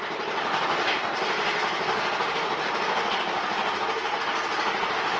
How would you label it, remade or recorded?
recorded